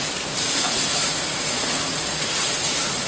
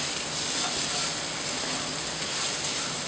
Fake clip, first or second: first